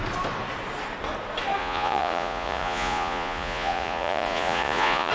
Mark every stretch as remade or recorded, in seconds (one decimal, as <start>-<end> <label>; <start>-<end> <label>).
0.0-1.6 recorded; 1.6-5.1 remade